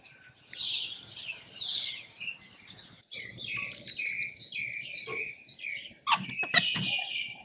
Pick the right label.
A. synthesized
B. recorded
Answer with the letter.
B